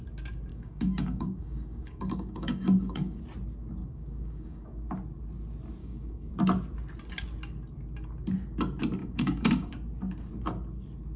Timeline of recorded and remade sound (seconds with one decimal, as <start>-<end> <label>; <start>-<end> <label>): 0.0-0.5 recorded; 0.5-3.2 remade; 3.2-3.8 recorded; 3.8-4.9 remade; 4.9-5.8 recorded; 5.8-6.3 remade; 6.3-9.0 recorded; 9.0-9.7 remade; 9.7-11.2 recorded